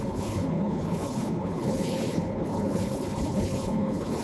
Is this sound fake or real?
fake